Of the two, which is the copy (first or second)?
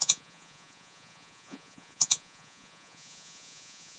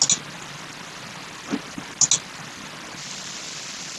first